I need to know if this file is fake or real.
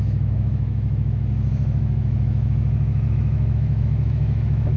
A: fake